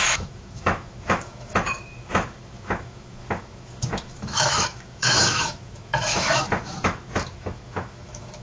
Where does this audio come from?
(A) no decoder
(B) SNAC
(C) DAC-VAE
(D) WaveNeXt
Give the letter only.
C